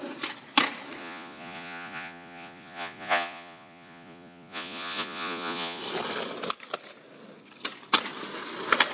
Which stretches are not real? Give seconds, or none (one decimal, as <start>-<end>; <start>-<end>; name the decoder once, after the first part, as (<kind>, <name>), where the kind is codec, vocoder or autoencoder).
1.0-5.8 (vocoder, Vocos)